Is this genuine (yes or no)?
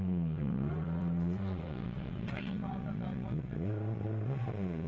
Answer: no